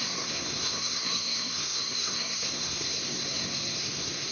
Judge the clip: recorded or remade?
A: remade